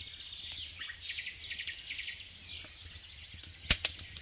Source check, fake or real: real